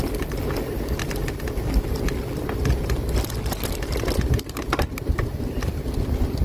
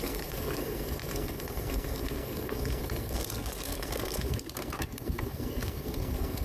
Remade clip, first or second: second